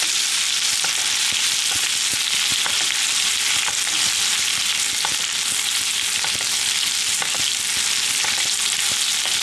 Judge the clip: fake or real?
real